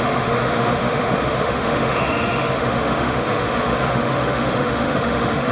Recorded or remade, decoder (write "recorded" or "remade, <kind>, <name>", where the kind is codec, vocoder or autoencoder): remade, autoencoder, DAC-VAE